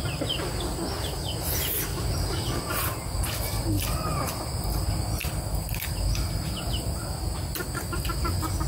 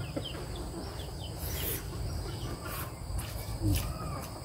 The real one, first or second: first